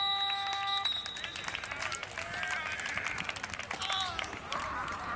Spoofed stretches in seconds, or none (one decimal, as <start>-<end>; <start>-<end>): none